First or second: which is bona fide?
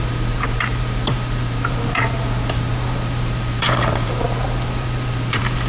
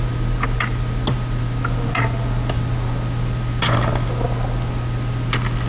second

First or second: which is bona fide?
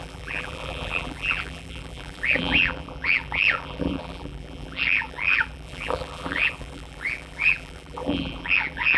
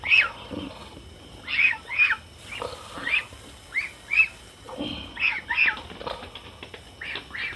second